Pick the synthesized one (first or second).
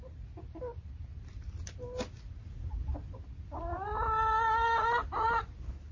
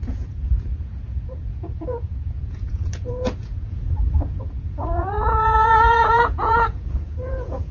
second